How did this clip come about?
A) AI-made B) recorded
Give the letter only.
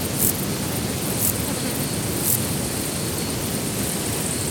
B